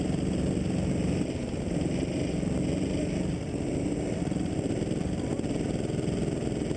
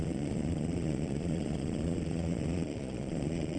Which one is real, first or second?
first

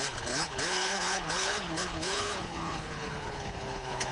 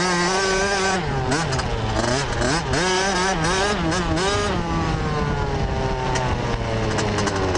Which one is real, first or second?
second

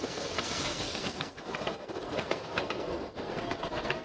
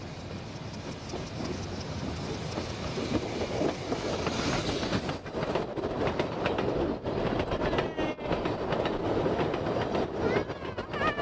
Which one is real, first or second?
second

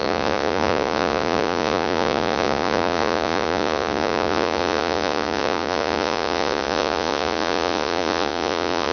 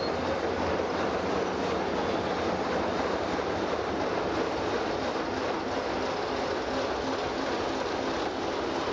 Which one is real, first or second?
second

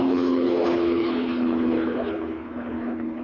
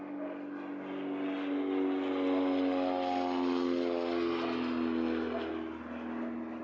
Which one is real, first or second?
second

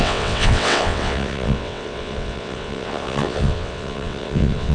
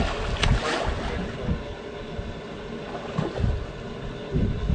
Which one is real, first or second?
second